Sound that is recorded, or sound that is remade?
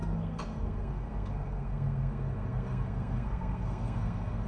remade